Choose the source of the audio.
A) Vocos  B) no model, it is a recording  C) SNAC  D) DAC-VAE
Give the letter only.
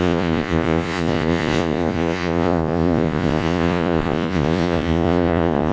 A